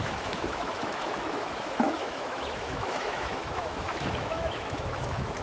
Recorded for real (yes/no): no